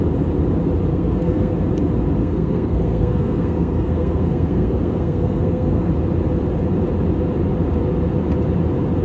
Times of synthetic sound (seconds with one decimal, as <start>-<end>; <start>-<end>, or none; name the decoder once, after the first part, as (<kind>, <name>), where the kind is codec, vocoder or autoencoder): 0.9-1.5 (codec, SNAC); 2.2-5.9